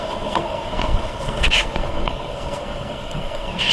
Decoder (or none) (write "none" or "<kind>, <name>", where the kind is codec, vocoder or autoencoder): codec, SNAC